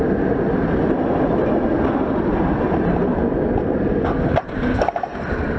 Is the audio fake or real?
real